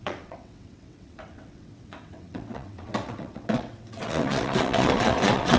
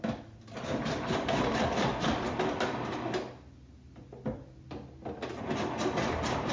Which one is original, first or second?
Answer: second